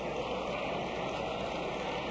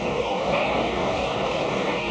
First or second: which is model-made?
second